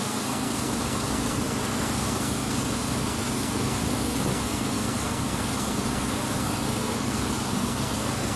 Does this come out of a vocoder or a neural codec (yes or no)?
yes